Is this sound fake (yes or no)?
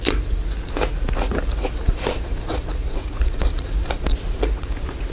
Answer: yes